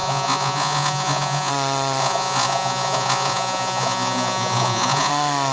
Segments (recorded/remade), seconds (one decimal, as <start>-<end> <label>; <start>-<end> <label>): 0.0-1.5 remade; 1.5-2.0 recorded; 2.0-5.1 remade; 5.1-5.5 recorded